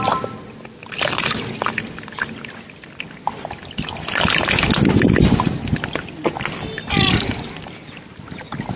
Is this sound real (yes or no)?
yes